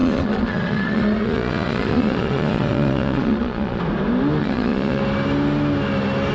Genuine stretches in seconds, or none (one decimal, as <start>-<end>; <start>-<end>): 3.8-4.4; 5.0-6.3